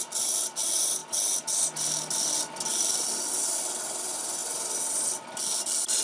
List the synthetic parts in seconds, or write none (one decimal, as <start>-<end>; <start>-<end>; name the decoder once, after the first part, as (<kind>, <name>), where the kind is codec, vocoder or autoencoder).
none